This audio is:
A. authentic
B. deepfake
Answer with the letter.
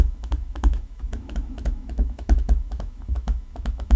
B